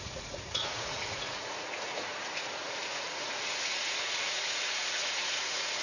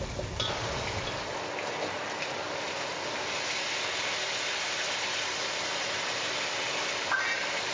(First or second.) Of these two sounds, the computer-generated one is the first